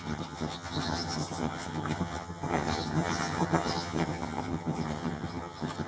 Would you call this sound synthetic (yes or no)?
yes